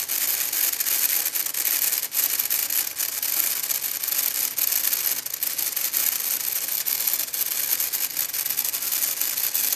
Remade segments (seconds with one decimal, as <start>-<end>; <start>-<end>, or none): none

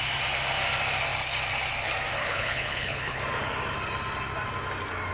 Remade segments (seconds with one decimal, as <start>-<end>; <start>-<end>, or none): 2.2-3.2

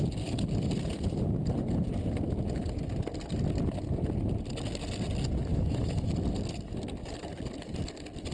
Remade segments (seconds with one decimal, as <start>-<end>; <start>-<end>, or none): 5.5-6.1

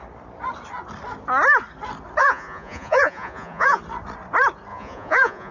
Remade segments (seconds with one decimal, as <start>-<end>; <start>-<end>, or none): 2.2-3.8; 4.7-5.5

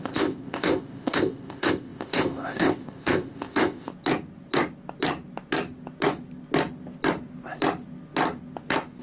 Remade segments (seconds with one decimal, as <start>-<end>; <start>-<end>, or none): 0.0-3.9

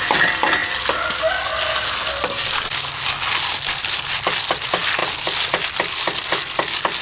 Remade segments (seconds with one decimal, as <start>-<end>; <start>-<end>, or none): none